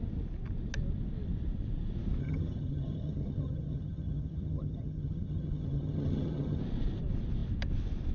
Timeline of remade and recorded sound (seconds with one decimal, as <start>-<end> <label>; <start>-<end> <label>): 0.0-2.2 recorded; 2.2-6.6 remade; 6.6-8.1 recorded